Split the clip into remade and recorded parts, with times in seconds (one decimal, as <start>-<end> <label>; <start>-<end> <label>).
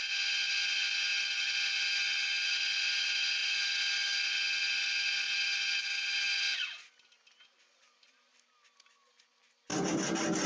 0.0-10.5 recorded